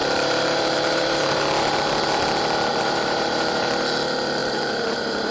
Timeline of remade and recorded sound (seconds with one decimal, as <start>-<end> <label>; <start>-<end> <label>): 0.0-2.2 remade; 2.2-2.7 recorded; 2.7-3.8 remade; 3.8-4.4 recorded; 4.4-5.3 remade